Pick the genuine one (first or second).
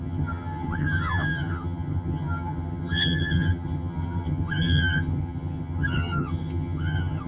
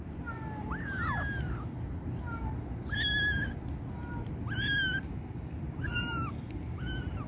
second